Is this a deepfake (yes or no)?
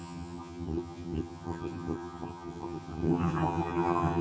yes